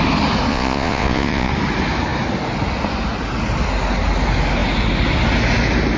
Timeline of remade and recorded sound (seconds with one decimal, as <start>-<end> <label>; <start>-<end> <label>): 0.0-0.5 recorded; 0.5-1.5 remade; 1.5-6.0 recorded